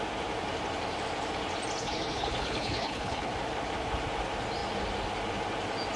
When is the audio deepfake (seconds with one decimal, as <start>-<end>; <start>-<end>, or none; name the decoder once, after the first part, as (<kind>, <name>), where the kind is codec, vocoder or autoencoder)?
1.8-3.3 (codec, HILCodec)